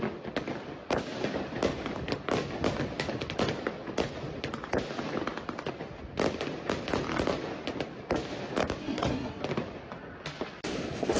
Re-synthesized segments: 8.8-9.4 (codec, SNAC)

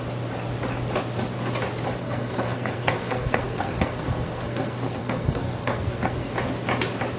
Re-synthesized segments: 2.0-6.3 (codec, SNAC)

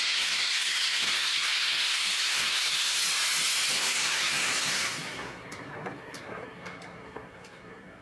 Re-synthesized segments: 0.0-3.0 (codec, SNAC); 3.7-8.0

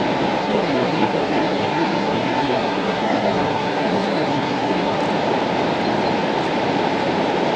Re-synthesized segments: 0.4-5.0 (codec, SNAC)

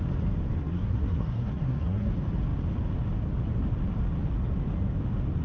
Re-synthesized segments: 0.6-2.1 (codec, SNAC)

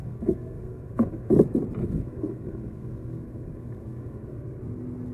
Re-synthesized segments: 0.0-1.3 (codec, SNAC); 1.8-4.6